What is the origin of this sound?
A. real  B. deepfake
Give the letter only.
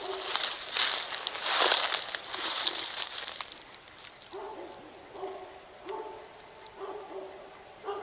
A